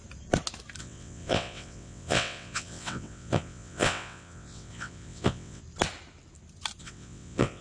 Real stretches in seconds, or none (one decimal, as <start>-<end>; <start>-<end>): 0.0-0.8; 5.6-6.8